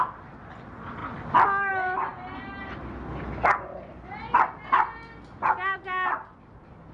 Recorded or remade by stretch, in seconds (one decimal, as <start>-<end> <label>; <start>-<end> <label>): 0.0-6.9 recorded